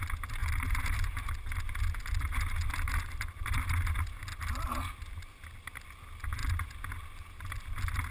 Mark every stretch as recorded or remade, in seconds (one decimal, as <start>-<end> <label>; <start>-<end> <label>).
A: 0.0-0.4 recorded; 0.4-1.3 remade; 1.3-8.1 recorded